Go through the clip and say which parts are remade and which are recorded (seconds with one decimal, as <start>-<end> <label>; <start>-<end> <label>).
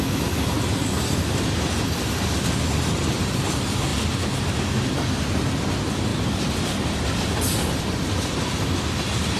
0.0-9.4 recorded